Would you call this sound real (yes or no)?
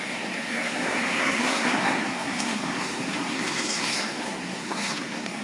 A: no